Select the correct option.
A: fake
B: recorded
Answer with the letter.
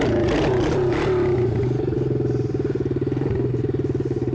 B